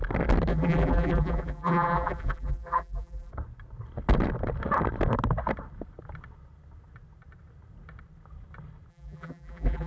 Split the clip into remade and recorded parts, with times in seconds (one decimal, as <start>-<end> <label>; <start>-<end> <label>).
0.0-0.5 recorded; 0.5-3.3 remade; 3.3-8.9 recorded; 8.9-9.9 remade